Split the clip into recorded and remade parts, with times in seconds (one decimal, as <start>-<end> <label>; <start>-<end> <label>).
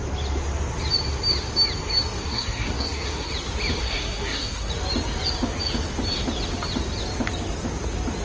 0.0-2.2 recorded; 2.2-3.3 remade; 3.3-3.8 recorded; 3.8-4.7 remade; 4.7-8.2 recorded